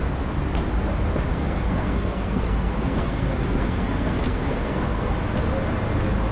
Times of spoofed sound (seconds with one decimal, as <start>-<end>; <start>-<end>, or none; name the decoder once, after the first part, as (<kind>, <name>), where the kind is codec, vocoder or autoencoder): 1.3-5.1 (codec, SNAC)